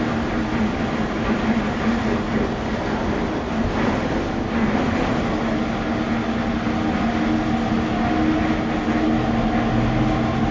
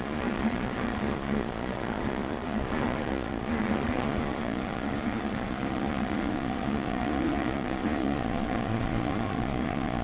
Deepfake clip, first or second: second